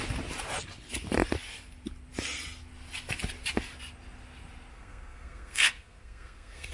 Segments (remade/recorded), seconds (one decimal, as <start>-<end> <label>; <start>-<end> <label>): 0.0-4.7 recorded; 4.7-6.7 remade